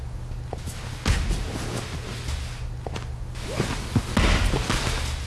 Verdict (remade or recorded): recorded